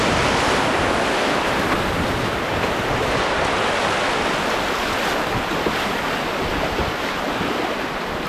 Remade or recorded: recorded